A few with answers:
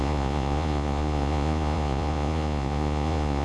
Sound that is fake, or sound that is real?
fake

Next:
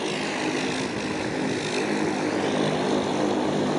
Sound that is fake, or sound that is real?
real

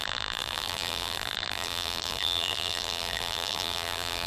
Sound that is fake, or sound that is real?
fake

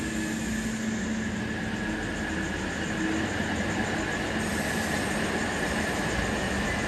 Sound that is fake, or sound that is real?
real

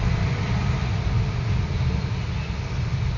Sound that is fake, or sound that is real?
real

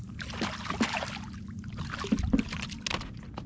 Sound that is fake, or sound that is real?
real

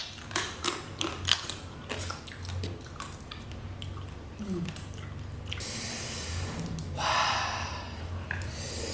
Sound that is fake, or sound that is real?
real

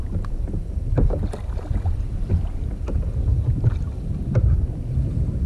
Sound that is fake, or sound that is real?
real